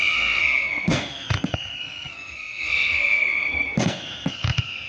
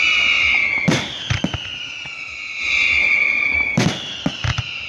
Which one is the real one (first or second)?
second